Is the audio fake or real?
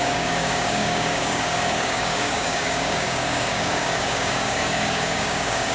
fake